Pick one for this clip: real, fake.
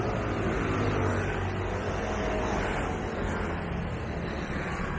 real